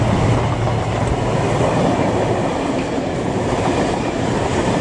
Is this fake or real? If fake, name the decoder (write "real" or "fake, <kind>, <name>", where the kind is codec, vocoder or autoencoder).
real